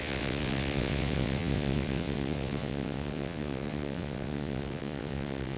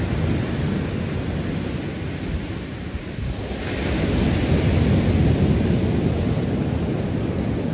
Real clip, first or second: second